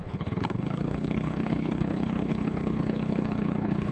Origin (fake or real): fake